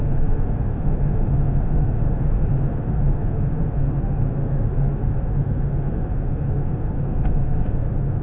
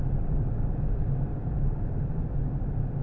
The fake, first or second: first